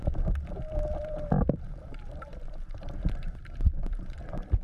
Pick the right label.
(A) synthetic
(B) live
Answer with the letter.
A